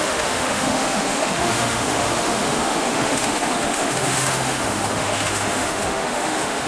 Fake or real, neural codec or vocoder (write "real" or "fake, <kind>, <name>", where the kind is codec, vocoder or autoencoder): fake, autoencoder, DAC-VAE